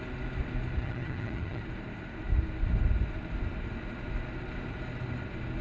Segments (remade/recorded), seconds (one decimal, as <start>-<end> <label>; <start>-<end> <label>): 0.0-0.8 recorded; 0.8-1.6 remade; 1.6-5.6 recorded